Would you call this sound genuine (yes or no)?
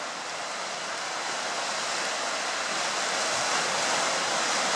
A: yes